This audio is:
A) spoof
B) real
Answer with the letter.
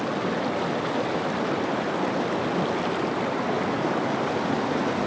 B